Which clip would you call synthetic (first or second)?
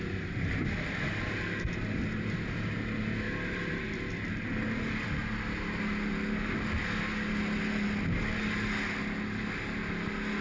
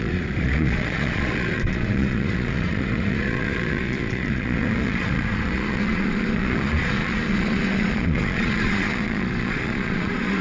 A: second